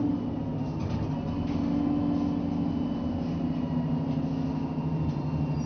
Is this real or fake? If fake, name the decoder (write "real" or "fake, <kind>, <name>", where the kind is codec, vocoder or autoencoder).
real